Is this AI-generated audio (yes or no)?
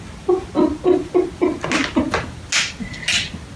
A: no